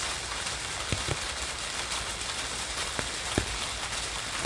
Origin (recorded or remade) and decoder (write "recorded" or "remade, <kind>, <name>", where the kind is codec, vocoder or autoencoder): recorded